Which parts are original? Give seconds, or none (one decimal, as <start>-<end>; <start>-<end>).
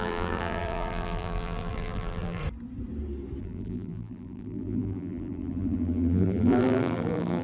2.4-3.4